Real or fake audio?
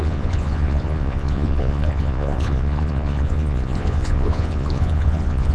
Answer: fake